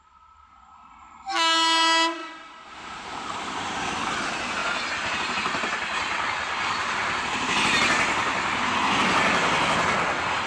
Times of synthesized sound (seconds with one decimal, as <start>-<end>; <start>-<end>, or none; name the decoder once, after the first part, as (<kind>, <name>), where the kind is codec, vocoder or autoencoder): 2.2-3.8 (vocoder, BigVGAN v2)